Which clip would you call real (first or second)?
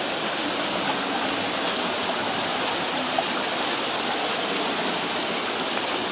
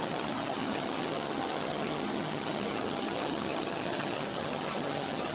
first